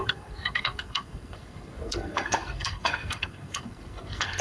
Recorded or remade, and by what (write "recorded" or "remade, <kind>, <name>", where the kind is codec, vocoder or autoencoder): remade, codec, SNAC